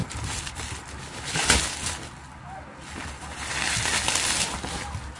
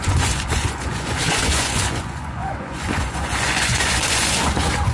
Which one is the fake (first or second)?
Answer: second